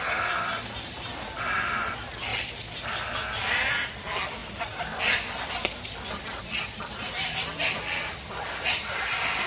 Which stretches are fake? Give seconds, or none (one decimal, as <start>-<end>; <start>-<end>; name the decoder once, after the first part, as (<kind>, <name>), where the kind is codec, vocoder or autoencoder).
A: none